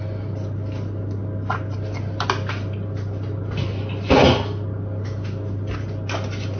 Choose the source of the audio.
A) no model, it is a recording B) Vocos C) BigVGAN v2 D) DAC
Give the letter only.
A